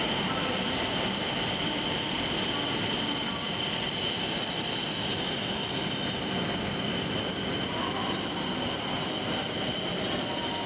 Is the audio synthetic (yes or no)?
no